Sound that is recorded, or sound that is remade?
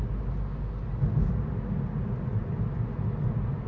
recorded